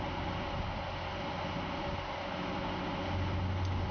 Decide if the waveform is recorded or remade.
recorded